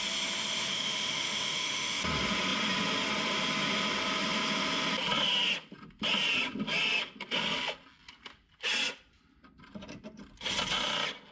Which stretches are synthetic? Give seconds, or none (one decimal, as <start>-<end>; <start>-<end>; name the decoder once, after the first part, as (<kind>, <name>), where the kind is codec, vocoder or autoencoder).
0.7-2.0 (autoencoder, DAC-VAE)